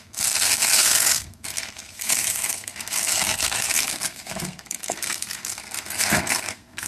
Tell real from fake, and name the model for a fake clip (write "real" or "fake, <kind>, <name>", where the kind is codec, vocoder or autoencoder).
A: fake, codec, SNAC